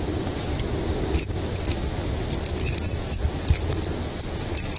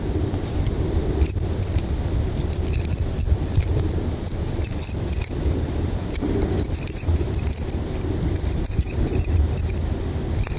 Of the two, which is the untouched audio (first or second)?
first